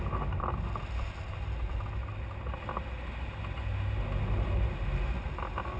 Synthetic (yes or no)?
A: no